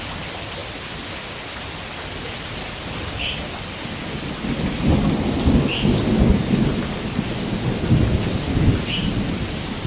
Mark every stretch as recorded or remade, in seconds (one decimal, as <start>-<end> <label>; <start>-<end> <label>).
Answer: 0.0-9.9 recorded

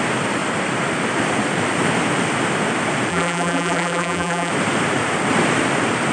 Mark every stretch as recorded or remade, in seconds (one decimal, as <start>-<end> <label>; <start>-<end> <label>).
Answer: 0.0-3.1 recorded; 3.1-4.5 remade; 4.5-6.1 recorded

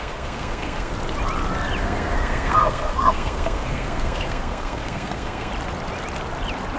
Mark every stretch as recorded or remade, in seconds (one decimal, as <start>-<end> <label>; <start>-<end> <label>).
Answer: 0.0-0.9 remade; 0.9-1.8 recorded; 1.8-5.5 remade; 5.5-6.8 recorded

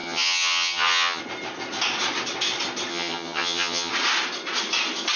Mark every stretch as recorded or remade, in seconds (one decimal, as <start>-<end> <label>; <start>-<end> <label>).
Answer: 0.0-1.2 remade; 1.2-2.9 recorded; 2.9-3.9 remade; 3.9-5.2 recorded

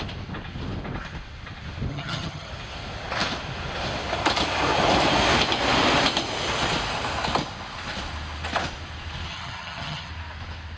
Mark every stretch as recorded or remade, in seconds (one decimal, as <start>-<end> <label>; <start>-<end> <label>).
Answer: 0.0-1.9 recorded; 1.9-2.5 remade; 2.5-9.3 recorded; 9.3-10.1 remade; 10.1-10.8 recorded

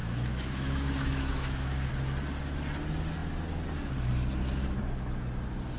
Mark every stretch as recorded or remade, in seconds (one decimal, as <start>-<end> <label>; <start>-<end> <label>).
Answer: 0.0-1.9 remade; 1.9-5.8 recorded